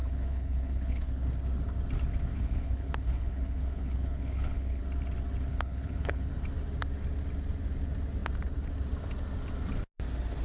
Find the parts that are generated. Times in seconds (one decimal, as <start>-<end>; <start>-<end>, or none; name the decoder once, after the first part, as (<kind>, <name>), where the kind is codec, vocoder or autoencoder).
0.0-1.1 (codec, HILCodec); 2.3-4.8; 5.5-6.3